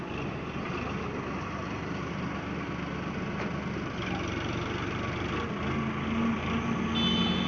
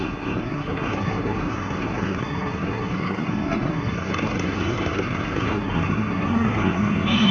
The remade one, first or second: second